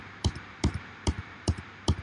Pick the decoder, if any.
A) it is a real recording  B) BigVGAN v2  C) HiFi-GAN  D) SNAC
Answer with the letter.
B